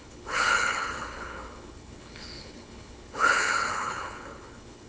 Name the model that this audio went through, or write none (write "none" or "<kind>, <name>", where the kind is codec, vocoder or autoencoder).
codec, HILCodec